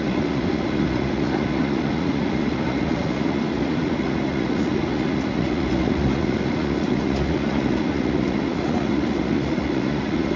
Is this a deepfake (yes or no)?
yes